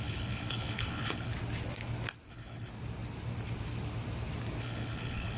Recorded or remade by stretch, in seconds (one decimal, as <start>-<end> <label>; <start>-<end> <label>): 0.0-1.3 remade; 1.3-2.3 recorded; 2.3-2.7 remade; 2.7-4.6 recorded; 4.6-5.4 remade